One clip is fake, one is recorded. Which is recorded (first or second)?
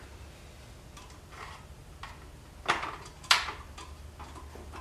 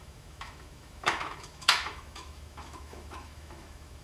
first